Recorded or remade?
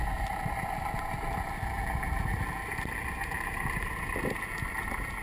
recorded